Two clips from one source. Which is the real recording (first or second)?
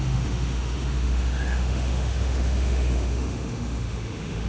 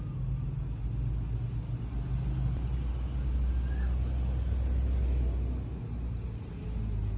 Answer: second